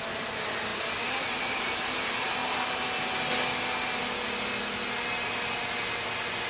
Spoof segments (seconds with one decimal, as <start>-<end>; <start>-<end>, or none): none